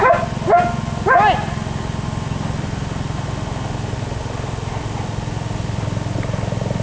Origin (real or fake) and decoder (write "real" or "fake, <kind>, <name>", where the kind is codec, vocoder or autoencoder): real